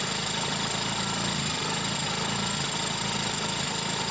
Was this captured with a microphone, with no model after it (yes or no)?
yes